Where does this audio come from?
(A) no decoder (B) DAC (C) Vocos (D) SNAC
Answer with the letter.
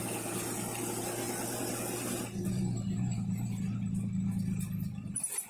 A